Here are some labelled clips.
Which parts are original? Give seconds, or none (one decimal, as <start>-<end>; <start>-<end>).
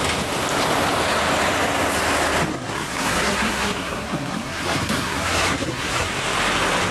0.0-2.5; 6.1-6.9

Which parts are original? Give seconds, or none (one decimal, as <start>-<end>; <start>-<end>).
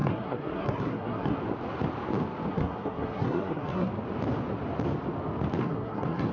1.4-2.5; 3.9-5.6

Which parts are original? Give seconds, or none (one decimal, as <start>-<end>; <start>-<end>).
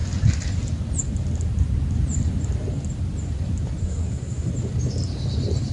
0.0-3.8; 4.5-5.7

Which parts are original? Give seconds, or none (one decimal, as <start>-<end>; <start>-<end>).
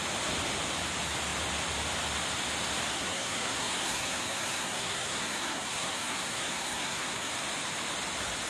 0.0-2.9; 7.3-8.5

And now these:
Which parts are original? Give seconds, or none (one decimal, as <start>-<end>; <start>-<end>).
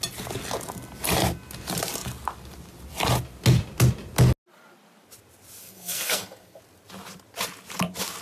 0.0-5.6; 6.6-8.2